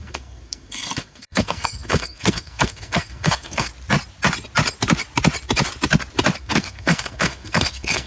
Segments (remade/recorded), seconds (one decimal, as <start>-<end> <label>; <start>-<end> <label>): 0.0-3.7 remade; 3.7-6.4 recorded; 6.4-8.1 remade